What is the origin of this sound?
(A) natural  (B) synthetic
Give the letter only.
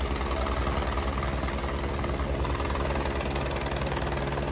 A